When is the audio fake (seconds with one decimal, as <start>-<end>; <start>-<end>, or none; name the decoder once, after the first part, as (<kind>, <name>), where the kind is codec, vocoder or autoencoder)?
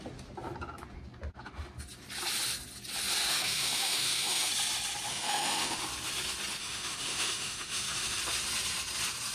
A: 3.3-4.5 (autoencoder, DAC-VAE); 5.1-5.8; 6.6-8.2